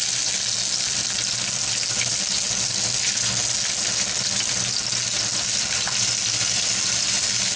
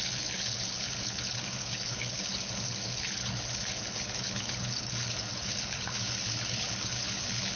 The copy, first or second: second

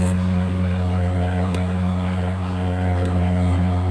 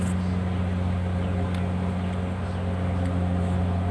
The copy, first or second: first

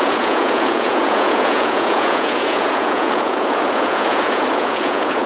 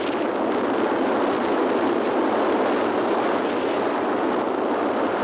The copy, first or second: first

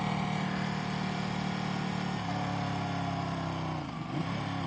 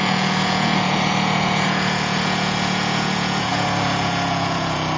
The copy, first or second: second